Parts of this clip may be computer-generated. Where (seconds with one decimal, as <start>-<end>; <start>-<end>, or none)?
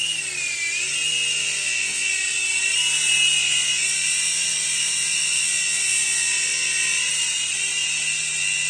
1.4-2.1; 3.4-7.1